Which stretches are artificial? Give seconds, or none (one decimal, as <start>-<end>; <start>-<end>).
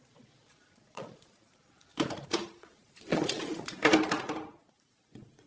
0.0-1.9; 2.6-3.8; 4.6-5.5